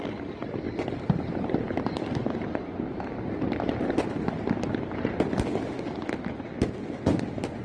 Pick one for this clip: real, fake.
real